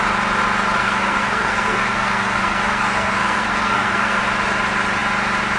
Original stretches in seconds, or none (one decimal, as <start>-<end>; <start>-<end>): 0.0-0.8; 4.2-5.6